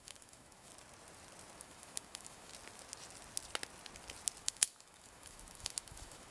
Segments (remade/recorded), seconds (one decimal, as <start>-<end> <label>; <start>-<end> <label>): 0.0-0.7 remade; 0.7-1.6 recorded; 1.6-2.5 remade; 2.5-4.4 recorded; 4.4-6.3 remade